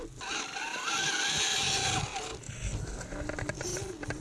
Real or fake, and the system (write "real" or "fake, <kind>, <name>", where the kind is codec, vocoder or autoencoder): real